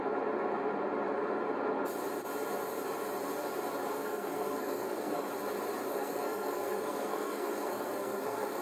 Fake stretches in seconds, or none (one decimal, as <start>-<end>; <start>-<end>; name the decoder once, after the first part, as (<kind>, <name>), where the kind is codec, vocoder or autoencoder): 3.9-5.3 (codec, SNAC); 5.9-8.6